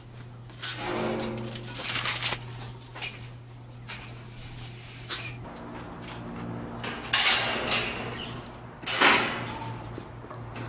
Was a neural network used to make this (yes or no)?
no